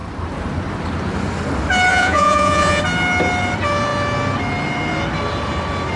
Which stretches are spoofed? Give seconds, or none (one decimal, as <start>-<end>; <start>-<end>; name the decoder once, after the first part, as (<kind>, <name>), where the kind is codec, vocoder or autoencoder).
1.9-2.8 (vocoder, Vocos)